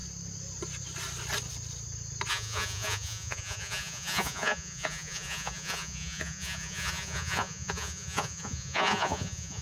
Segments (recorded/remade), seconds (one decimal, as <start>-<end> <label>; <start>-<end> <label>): 0.0-2.3 recorded; 2.3-9.6 remade